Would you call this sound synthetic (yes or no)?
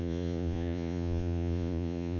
yes